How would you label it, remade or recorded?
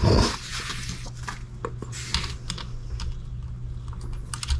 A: recorded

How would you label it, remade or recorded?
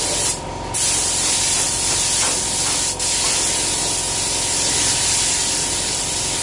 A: recorded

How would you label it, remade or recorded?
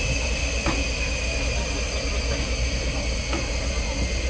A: recorded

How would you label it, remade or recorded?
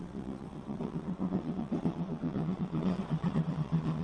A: remade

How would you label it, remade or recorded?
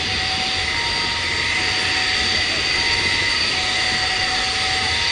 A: recorded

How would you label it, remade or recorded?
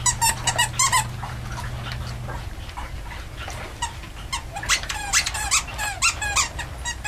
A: recorded